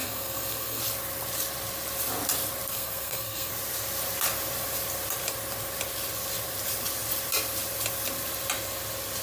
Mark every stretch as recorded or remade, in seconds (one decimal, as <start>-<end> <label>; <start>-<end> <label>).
0.0-0.8 remade; 0.8-2.7 recorded; 2.7-3.5 remade; 3.5-9.2 recorded

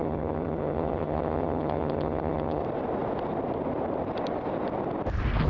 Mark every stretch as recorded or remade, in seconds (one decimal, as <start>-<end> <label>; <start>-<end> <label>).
0.0-2.6 remade; 2.6-5.5 recorded

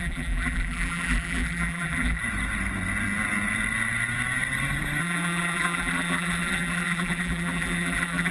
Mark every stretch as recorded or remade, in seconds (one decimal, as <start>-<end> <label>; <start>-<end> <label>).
0.0-2.2 remade; 2.2-5.0 recorded; 5.0-8.3 remade

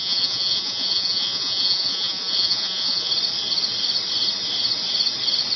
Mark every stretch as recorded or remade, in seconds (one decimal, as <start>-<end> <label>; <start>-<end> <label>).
0.0-3.1 remade; 3.1-5.6 recorded

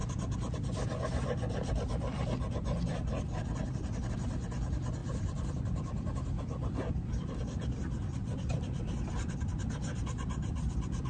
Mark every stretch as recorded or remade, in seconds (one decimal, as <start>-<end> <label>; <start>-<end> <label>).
0.0-5.0 recorded; 5.0-10.0 remade; 10.0-11.1 recorded

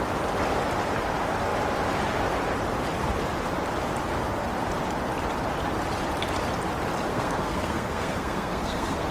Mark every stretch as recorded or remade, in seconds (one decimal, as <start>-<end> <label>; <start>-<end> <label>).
0.0-7.1 recorded; 7.1-9.1 remade

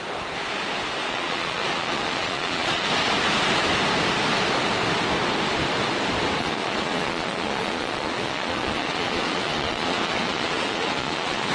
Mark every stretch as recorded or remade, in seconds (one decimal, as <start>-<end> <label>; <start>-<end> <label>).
0.0-1.0 recorded; 1.0-2.9 remade; 2.9-6.4 recorded; 6.4-11.5 remade

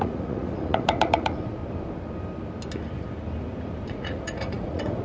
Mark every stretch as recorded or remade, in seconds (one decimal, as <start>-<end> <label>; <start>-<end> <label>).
0.0-1.6 remade; 1.6-3.9 recorded; 3.9-5.0 remade